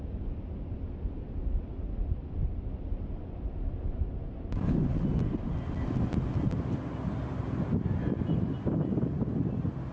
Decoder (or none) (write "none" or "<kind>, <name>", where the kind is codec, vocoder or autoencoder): none